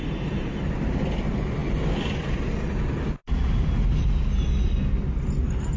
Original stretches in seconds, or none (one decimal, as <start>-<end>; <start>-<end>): 0.7-5.8